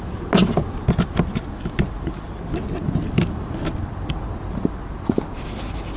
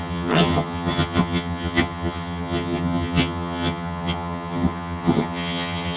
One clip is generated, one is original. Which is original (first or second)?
first